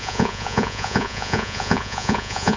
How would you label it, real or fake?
fake